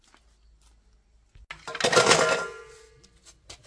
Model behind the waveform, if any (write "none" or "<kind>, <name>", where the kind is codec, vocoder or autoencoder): none